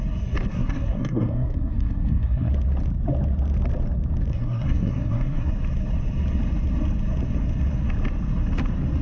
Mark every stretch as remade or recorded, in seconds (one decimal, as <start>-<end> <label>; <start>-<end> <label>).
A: 0.0-0.5 recorded; 0.5-2.5 remade; 2.5-4.3 recorded; 4.3-5.5 remade; 5.5-9.0 recorded